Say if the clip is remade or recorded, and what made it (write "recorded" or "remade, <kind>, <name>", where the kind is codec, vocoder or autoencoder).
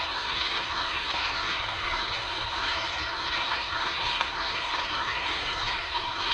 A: remade, codec, SNAC